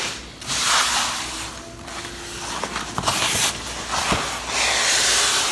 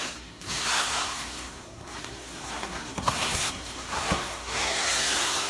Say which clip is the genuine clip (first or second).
first